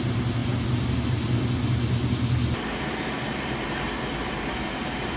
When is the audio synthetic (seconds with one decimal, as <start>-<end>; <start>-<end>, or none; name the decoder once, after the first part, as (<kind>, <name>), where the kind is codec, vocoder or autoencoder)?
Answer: none